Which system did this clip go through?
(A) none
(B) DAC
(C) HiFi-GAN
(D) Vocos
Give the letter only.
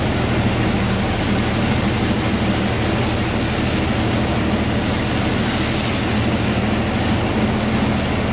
A